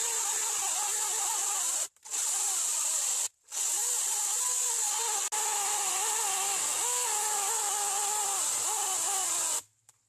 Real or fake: real